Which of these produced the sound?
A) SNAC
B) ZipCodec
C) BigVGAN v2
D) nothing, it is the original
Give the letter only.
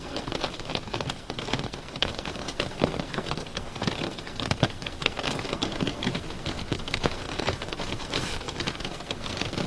A